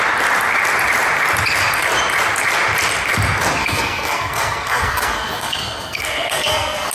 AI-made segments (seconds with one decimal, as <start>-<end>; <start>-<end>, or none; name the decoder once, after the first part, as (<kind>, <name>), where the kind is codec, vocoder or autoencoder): 3.6-6.9 (codec, SNAC)